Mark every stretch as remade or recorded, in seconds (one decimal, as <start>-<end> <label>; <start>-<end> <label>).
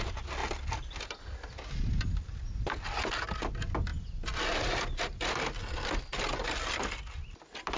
0.0-7.8 recorded